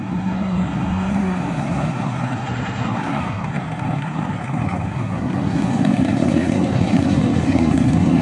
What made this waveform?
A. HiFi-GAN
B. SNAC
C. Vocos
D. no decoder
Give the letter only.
B